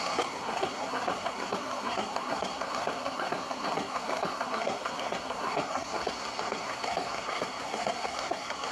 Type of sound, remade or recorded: remade